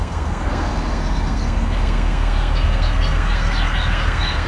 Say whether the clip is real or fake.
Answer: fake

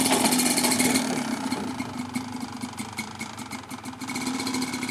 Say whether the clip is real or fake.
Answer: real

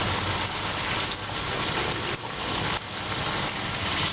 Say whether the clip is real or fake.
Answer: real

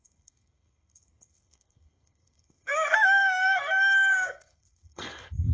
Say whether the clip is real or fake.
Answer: fake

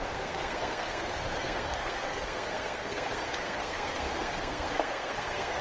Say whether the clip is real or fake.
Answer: fake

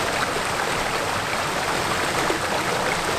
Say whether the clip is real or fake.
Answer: real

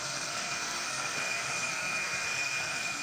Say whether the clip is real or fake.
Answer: fake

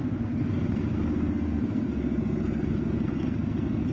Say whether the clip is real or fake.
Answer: fake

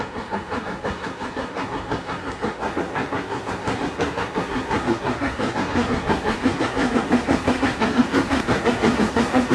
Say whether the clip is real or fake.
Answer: fake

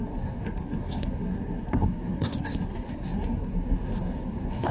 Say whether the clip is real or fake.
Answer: fake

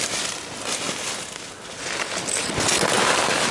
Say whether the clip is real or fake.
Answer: real